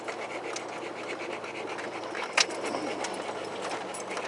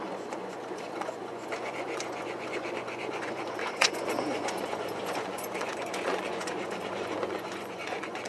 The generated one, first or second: second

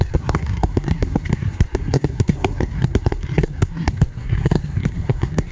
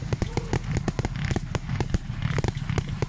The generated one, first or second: first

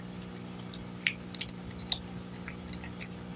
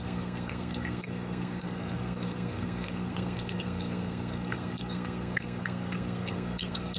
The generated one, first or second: second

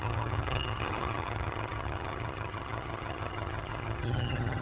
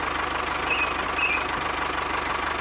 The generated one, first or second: first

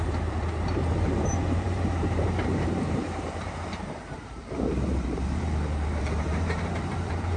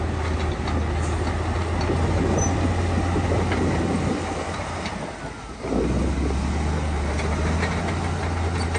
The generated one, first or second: first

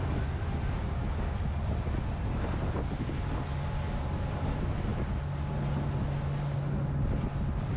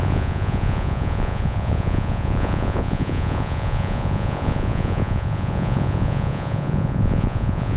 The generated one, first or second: second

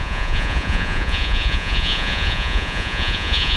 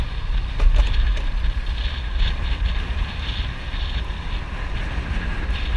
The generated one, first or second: first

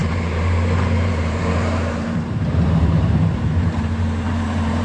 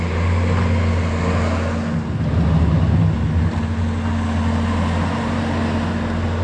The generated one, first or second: first